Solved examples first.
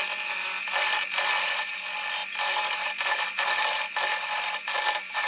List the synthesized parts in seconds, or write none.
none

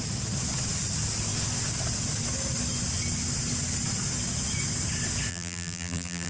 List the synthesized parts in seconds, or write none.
5.3-6.3 (vocoder, BigVGAN v2)

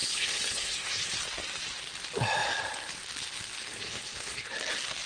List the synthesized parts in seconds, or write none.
0.0-1.1 (codec, HILCodec); 3.7-4.5

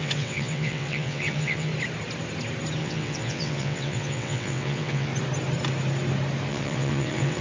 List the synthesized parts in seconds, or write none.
0.0-1.7 (vocoder, WaveNeXt); 2.8-5.1; 6.5-7.4

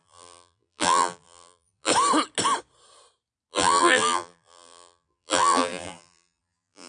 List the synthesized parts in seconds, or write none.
0.0-1.9 (vocoder, BigVGAN v2); 3.5-6.9

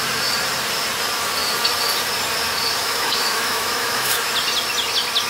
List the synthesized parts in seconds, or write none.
2.8-4.3 (autoencoder, DAC-VAE)

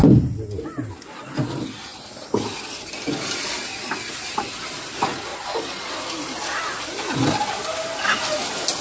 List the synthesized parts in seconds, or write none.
5.3-5.9 (vocoder, Vocos)